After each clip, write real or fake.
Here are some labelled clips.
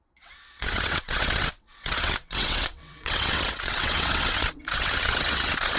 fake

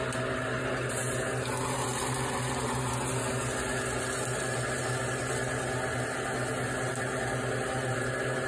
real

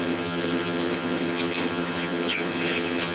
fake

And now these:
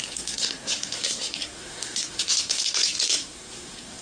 fake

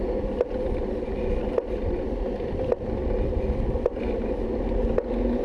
real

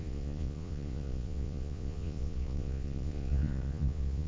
fake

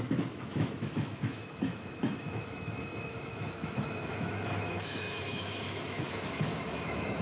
fake